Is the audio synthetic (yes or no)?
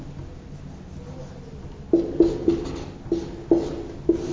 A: no